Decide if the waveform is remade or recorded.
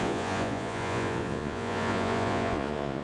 remade